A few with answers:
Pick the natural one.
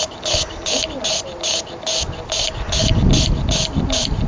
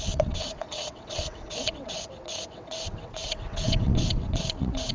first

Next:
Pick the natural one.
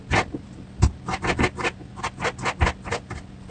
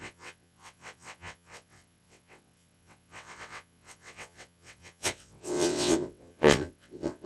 first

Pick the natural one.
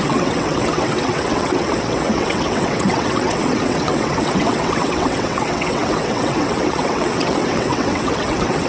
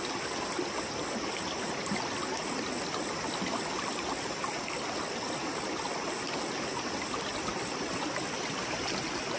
second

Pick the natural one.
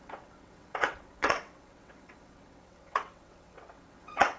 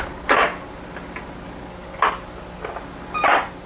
second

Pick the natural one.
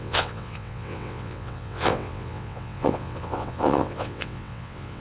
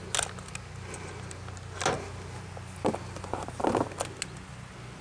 second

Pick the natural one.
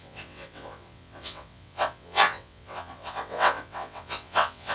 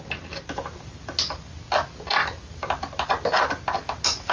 second